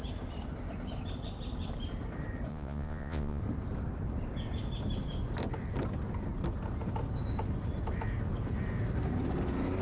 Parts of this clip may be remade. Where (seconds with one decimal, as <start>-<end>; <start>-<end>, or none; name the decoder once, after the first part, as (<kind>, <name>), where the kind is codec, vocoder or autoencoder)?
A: 2.5-3.4 (vocoder, Vocos)